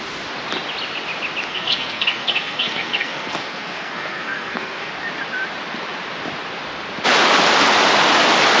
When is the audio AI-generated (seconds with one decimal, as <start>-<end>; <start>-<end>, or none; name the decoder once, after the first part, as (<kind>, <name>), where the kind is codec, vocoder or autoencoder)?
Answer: 1.5-4.9 (codec, SNAC)